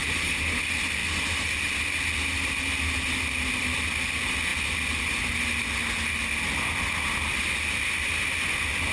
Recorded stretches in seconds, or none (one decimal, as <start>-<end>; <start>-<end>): 0.6-8.9